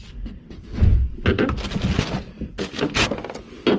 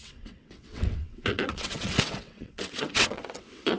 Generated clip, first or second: second